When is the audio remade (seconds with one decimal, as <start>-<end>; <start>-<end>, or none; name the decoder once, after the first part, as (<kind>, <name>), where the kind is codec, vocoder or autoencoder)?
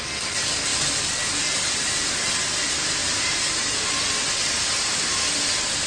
none